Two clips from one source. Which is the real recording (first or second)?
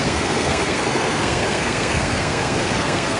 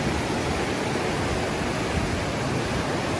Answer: second